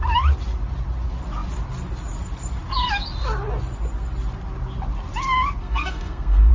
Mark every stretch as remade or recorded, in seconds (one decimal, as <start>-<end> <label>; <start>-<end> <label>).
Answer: 0.0-5.6 recorded; 5.6-6.5 remade